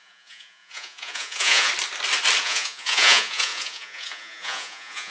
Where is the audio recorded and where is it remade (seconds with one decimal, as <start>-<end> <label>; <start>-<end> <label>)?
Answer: 0.0-1.7 remade; 1.7-2.4 recorded; 2.4-5.1 remade